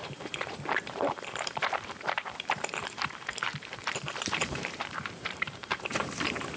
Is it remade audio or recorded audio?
remade